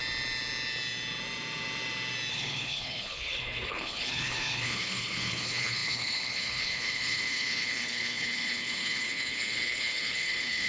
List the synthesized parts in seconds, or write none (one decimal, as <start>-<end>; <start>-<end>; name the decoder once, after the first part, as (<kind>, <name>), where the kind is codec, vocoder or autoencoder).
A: 2.3-10.7 (codec, HILCodec)